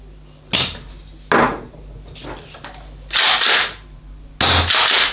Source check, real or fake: real